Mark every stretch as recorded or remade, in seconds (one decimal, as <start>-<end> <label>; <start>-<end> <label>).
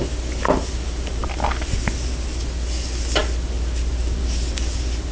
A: 0.0-5.1 recorded